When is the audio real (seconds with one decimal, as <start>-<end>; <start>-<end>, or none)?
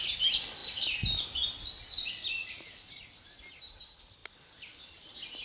0.0-5.4